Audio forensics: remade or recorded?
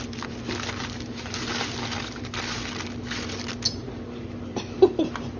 recorded